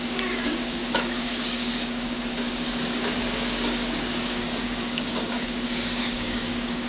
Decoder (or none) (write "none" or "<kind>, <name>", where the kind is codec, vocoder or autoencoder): codec, DAC